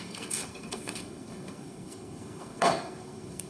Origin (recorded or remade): remade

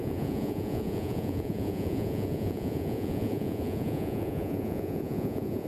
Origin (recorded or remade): remade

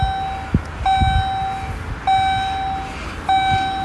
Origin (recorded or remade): recorded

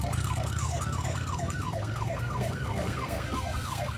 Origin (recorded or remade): remade